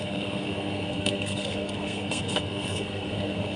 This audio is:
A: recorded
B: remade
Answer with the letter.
B